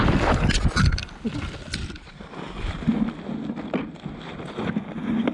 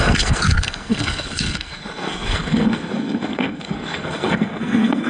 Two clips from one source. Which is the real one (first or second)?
first